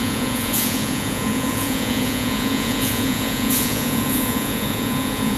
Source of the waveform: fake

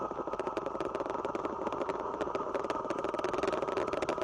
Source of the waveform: real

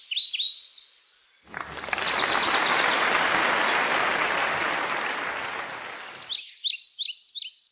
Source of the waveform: real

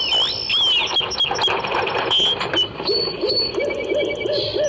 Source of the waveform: real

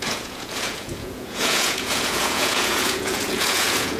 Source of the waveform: fake